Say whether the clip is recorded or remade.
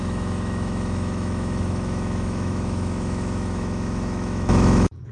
remade